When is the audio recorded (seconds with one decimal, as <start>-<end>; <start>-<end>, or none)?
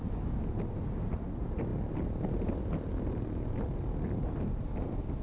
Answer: 0.0-5.2